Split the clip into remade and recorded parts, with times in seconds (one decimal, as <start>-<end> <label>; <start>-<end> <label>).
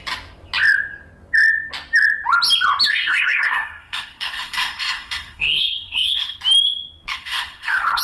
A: 0.0-2.9 recorded; 2.9-6.4 remade; 6.4-7.1 recorded; 7.1-8.0 remade